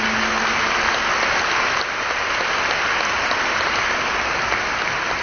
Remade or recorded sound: recorded